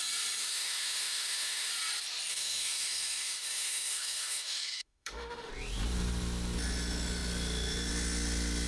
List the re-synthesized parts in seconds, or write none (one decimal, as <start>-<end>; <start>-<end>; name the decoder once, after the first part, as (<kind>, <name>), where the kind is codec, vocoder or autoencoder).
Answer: 0.4-1.7 (autoencoder, DAC-VAE); 2.3-5.5